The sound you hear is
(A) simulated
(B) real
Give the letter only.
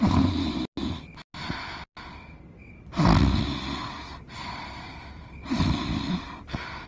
B